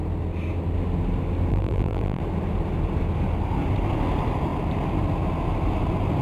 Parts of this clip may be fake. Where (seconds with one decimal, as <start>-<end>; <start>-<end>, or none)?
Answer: 1.5-2.2